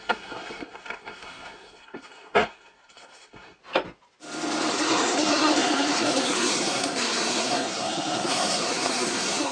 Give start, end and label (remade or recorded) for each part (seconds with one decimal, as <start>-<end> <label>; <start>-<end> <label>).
0.0-3.6 remade; 3.6-4.7 recorded; 4.7-9.5 remade